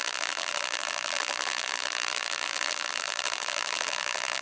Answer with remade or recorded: remade